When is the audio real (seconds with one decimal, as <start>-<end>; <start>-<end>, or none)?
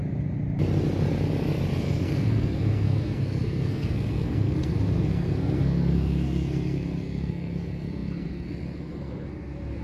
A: 0.0-1.8